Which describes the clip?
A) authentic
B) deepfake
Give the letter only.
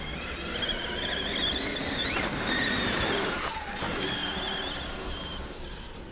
A